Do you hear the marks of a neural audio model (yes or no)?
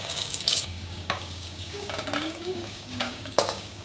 yes